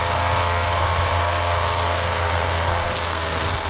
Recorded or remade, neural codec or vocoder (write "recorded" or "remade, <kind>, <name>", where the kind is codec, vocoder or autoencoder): remade, codec, SNAC